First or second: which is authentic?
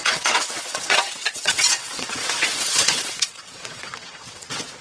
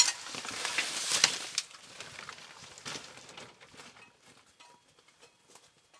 second